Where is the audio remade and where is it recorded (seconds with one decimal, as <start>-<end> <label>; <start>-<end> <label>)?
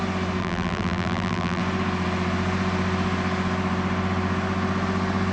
0.0-0.4 recorded; 0.4-1.6 remade; 1.6-5.3 recorded